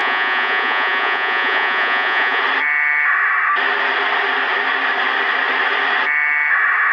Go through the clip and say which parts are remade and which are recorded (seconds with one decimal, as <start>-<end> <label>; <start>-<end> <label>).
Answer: 0.0-2.4 remade; 2.4-6.9 recorded